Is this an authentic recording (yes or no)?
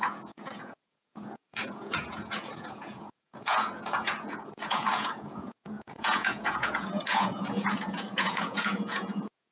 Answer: no